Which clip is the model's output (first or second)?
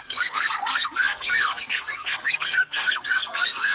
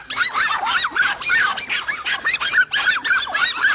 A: first